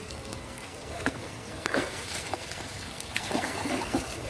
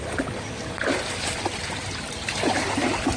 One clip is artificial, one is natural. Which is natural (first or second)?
second